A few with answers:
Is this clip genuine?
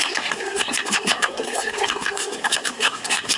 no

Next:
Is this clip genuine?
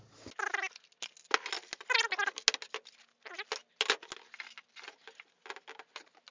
yes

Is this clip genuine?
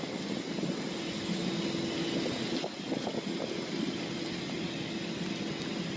yes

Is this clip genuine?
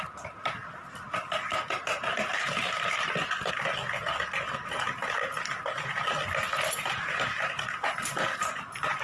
yes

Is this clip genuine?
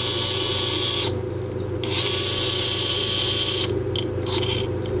yes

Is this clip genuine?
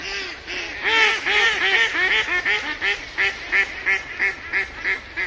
yes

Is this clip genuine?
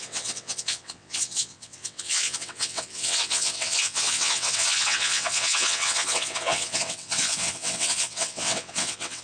no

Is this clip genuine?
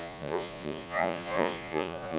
no